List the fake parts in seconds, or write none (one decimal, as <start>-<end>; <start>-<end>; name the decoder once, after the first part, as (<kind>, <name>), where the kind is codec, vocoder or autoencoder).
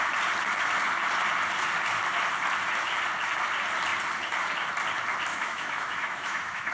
5.3-6.7 (autoencoder, DAC-VAE)